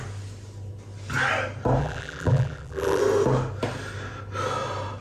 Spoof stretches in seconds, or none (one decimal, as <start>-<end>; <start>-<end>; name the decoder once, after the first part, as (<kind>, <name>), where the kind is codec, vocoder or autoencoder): 1.8-3.0 (vocoder, BigVGAN v2)